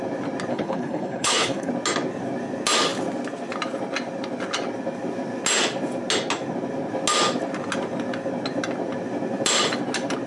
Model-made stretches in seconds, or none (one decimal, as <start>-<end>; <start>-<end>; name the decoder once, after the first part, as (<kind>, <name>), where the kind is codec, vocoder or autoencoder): 0.5-1.7 (codec, HILCodec)